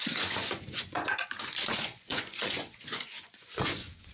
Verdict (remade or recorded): remade